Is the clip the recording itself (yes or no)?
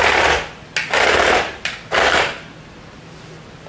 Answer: yes